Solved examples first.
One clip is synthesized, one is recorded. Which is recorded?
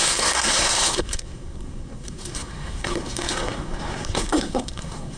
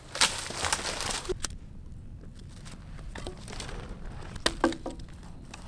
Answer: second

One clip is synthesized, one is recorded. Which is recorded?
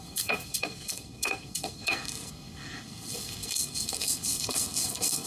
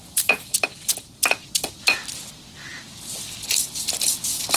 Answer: second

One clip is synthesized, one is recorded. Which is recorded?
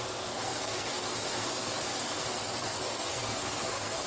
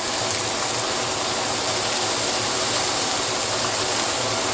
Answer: second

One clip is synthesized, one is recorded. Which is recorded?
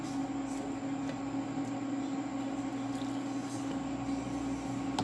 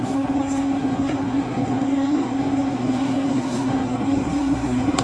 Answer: first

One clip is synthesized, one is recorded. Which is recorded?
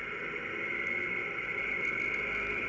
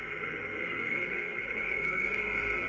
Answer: first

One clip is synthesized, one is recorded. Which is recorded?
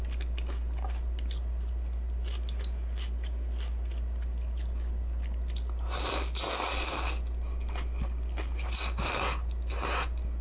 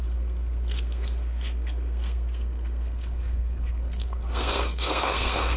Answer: first